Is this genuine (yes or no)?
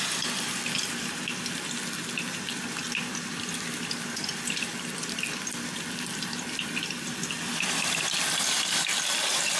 yes